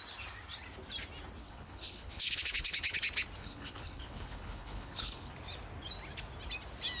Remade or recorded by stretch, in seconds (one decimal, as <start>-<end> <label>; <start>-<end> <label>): 0.0-1.4 recorded; 1.4-3.0 remade; 3.0-3.4 recorded; 3.4-5.3 remade; 5.3-7.0 recorded